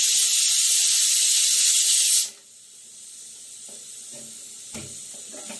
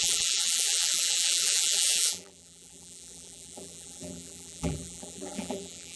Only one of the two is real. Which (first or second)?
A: first